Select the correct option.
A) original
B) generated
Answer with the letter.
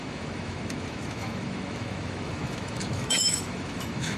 B